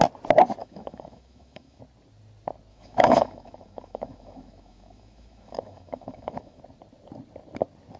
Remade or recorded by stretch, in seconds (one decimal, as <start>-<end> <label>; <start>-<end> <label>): 0.0-0.6 recorded; 0.6-1.8 remade; 1.8-2.7 recorded; 2.7-6.6 remade; 6.6-8.0 recorded